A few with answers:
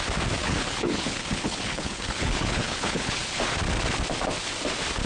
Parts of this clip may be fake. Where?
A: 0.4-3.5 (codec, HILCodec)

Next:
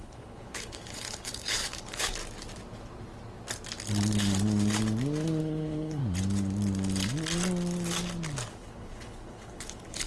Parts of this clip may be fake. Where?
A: 0.0-2.2 (codec, HILCodec); 5.4-6.0; 8.5-10.1

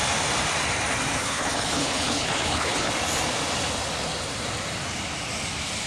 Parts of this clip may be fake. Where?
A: 1.2-2.9 (codec, HILCodec)